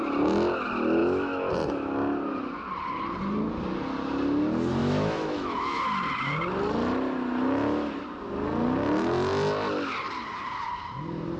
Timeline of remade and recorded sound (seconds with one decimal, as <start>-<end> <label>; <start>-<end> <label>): 0.0-1.0 recorded; 1.0-1.5 remade; 1.5-4.8 recorded; 4.8-5.8 remade; 5.8-11.4 recorded